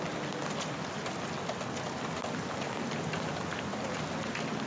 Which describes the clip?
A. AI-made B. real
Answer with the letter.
B